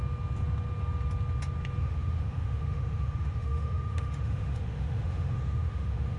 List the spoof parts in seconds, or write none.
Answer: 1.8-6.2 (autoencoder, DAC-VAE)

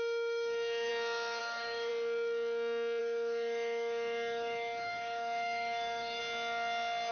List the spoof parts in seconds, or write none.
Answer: 0.0-0.9 (autoencoder, DAC-VAE); 1.4-1.9; 3.0-6.2

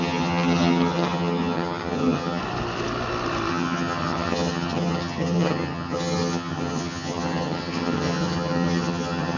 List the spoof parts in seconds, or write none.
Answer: 0.0-2.4 (vocoder, HiFi-GAN); 3.5-9.4

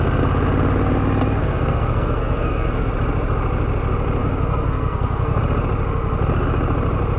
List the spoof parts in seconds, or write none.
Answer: 1.4-2.9 (codec, SNAC); 4.2-5.4

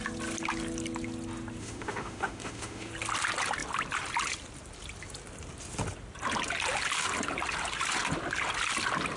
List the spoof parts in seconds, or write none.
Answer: 1.6-2.9 (autoencoder, DAC-VAE)

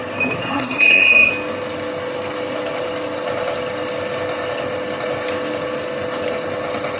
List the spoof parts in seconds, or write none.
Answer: 0.4-1.3 (codec, SNAC)

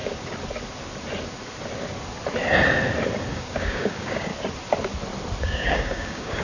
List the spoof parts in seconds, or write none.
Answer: 3.3-4.3 (codec, DAC); 5.4-6.4